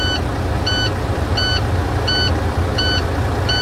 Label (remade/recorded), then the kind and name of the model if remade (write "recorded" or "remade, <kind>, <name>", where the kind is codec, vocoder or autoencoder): recorded